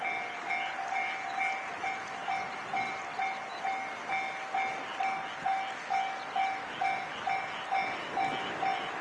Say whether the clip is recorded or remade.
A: recorded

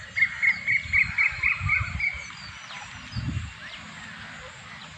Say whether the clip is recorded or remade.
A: recorded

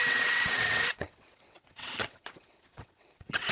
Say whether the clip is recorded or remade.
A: remade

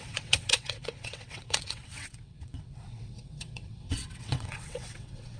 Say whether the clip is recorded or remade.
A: remade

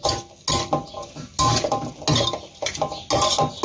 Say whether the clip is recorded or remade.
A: recorded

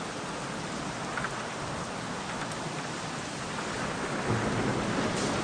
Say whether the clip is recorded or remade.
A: recorded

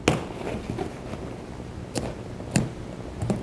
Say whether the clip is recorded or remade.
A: recorded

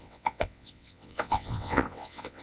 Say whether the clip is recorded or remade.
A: remade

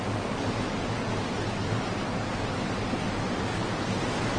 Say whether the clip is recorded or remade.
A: recorded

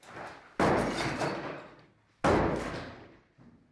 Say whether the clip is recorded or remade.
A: recorded